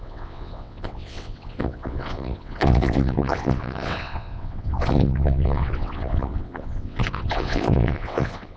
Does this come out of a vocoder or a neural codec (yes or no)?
yes